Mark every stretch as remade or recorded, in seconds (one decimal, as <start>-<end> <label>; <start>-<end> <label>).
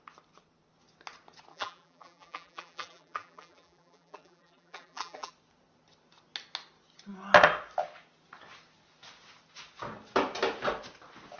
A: 0.0-1.5 recorded; 1.5-5.3 remade; 5.3-11.4 recorded